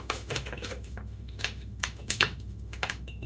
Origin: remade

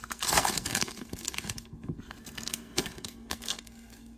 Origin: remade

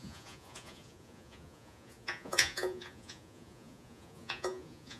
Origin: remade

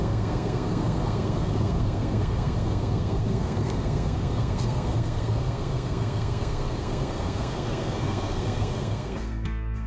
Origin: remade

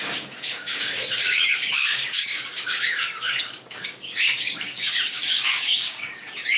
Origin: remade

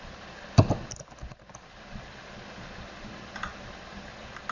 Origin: recorded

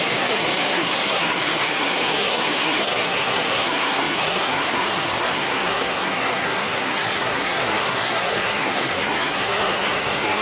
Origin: remade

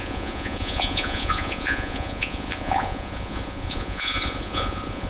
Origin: remade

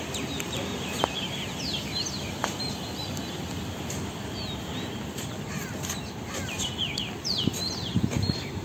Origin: recorded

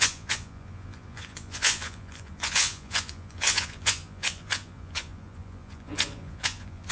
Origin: remade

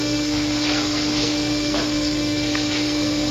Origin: remade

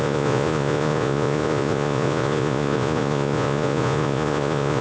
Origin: remade